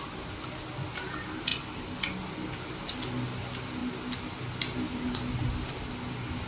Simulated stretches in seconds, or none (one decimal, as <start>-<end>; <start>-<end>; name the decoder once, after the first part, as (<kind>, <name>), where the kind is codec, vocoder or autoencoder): none